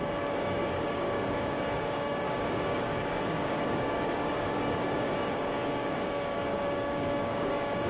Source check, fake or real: fake